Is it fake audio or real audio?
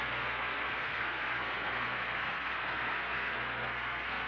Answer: fake